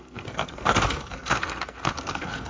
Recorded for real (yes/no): no